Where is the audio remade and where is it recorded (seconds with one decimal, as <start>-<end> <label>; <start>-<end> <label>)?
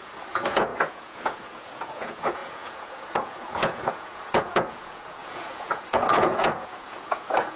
0.0-7.6 remade